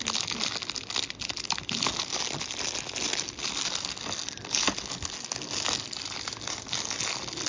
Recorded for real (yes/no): yes